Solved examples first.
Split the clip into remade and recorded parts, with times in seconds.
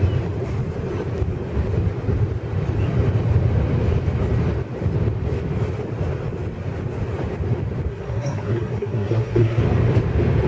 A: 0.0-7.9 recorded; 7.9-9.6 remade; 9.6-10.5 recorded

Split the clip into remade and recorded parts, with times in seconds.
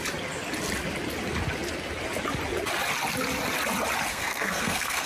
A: 0.0-4.1 recorded; 4.1-5.1 remade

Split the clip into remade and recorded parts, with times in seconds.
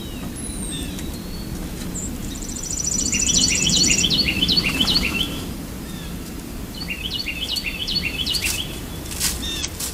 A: 0.0-2.2 recorded; 2.2-7.1 remade; 7.1-7.8 recorded; 7.8-8.9 remade; 8.9-9.9 recorded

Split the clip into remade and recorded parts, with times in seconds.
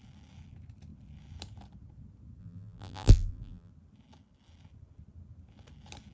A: 0.0-2.4 recorded; 2.4-3.7 remade; 3.7-6.1 recorded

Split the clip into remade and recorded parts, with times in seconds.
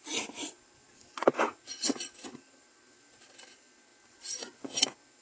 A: 0.0-5.2 recorded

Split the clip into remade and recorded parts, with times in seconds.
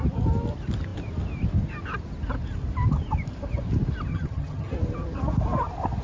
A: 0.0-4.1 recorded; 4.1-4.7 remade; 4.7-6.0 recorded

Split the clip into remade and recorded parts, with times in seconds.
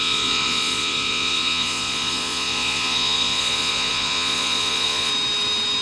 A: 0.0-5.1 remade; 5.1-5.8 recorded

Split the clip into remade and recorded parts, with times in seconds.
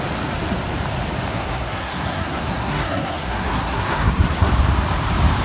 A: 0.0-1.3 recorded; 1.3-4.5 remade; 4.5-5.4 recorded